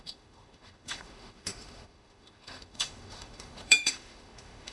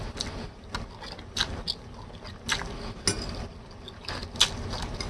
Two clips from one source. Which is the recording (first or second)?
second